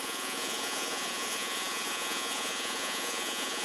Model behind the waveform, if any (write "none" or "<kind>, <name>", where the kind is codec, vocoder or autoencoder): vocoder, Vocos